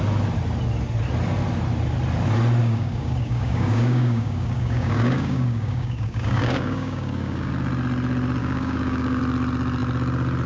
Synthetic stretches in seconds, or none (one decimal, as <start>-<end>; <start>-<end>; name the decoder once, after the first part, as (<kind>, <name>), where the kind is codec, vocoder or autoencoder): 2.6-7.5 (codec, DAC); 8.4-9.2